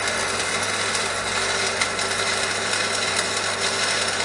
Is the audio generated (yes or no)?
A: no